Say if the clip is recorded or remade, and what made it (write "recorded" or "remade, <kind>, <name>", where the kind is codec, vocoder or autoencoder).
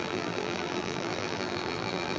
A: remade, vocoder, BigVGAN v2